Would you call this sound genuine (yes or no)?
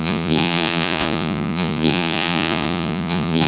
no